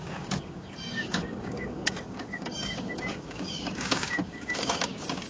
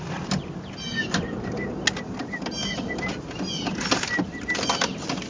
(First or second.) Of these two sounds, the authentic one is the second